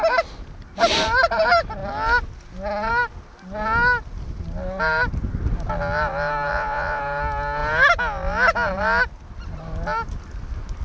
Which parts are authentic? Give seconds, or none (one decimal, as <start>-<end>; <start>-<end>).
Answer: 0.0-6.5; 7.0-10.8